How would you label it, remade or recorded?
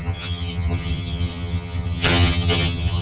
remade